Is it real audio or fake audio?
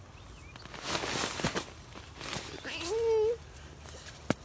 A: real